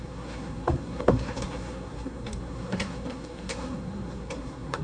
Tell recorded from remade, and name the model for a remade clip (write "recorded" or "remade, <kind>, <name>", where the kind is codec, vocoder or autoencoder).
remade, codec, SNAC